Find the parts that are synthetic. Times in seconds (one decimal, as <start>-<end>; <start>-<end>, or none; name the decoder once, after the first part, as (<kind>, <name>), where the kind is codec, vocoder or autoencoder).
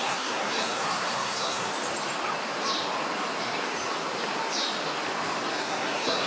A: 0.0-1.7 (codec, SNAC); 5.5-6.3